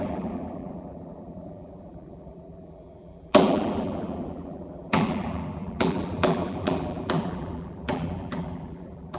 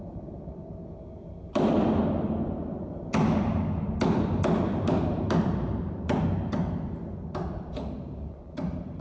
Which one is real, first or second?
second